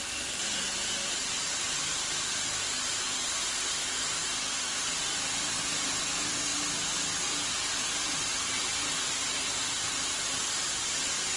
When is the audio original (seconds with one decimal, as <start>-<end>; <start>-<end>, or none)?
6.5-7.5